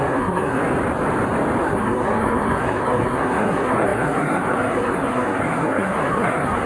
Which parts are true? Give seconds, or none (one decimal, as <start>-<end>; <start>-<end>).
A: 0.6-1.6